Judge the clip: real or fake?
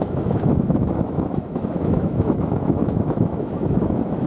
fake